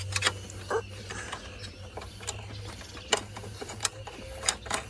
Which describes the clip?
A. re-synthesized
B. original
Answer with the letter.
B